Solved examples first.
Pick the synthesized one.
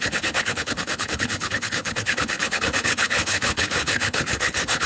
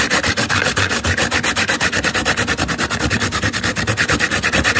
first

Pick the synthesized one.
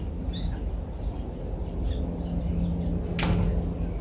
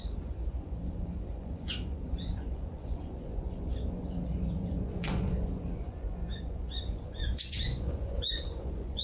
second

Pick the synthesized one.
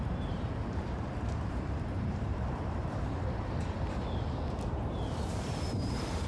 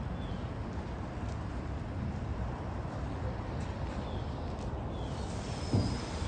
first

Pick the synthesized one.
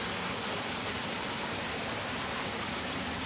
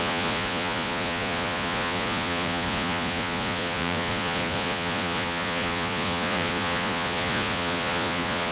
second